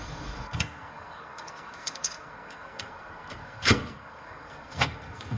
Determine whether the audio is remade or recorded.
remade